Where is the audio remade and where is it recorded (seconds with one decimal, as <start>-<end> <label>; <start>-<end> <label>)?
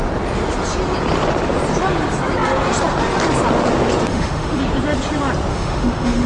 0.0-4.1 recorded; 4.1-4.6 remade; 4.6-5.5 recorded; 5.5-6.3 remade